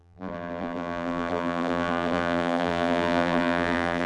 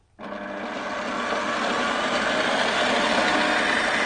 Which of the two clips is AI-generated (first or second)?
first